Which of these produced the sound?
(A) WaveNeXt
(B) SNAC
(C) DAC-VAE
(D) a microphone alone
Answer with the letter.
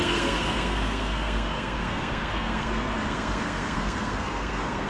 B